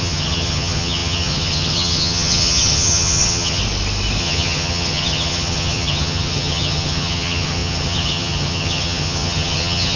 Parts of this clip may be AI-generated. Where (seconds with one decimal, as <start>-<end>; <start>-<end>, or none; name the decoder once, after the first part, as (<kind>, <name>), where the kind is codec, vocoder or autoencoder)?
0.0-3.6 (vocoder, HiFi-GAN); 4.2-10.0